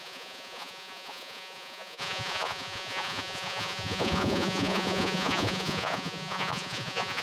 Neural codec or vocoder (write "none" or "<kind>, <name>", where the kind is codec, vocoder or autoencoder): vocoder, Vocos